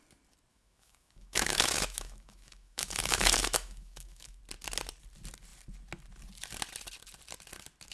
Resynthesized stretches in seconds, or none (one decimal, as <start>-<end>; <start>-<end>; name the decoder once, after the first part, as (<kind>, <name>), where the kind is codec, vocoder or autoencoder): 0.5-4.4 (autoencoder, DAC-VAE)